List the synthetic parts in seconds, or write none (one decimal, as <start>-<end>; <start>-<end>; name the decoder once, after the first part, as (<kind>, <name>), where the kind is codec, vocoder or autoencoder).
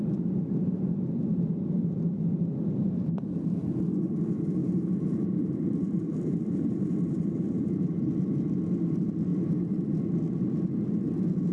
4.6-8.0 (vocoder, BigVGAN v2)